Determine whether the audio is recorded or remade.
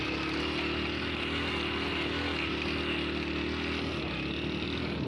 recorded